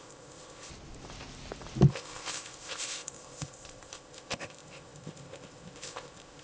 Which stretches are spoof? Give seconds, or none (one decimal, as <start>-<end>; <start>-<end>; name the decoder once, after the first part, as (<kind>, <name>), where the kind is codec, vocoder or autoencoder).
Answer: 0.0-0.7 (codec, ZipCodec); 1.9-6.4